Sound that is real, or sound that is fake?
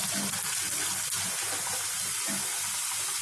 real